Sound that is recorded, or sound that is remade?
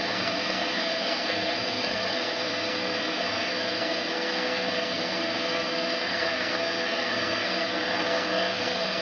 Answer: remade